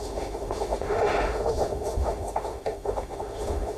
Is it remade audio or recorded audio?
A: remade